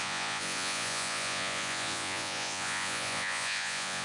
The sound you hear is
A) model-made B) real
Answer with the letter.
A